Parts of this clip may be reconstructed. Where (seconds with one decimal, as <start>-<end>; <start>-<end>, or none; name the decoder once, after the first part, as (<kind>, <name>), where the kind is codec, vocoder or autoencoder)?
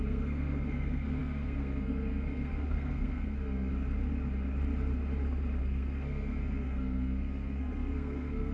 0.0-3.7 (codec, SNAC); 5.6-8.5